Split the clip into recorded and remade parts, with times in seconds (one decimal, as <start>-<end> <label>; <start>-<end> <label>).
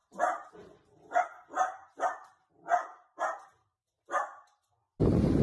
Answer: 0.0-0.5 remade; 0.5-5.4 recorded